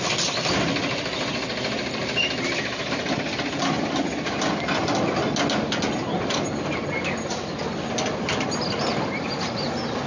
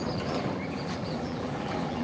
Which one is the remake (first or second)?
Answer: second